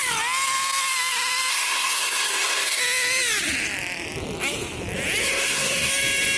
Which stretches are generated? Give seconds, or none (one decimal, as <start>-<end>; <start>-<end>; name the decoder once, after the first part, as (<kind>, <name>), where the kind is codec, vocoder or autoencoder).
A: 1.5-2.8 (codec, SNAC); 5.2-5.9